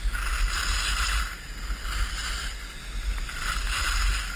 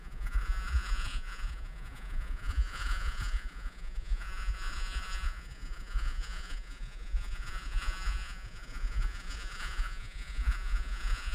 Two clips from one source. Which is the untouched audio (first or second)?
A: first